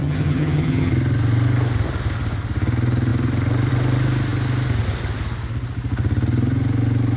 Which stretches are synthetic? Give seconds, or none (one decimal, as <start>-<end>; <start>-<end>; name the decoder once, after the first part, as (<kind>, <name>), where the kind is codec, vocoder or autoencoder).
0.0-0.9 (vocoder, HiFi-GAN)